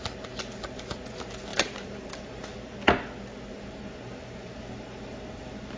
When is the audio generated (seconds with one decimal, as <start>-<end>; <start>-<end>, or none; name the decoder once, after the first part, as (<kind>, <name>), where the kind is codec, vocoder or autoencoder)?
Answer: 1.5-2.6 (vocoder, BigVGAN v2); 3.5-5.8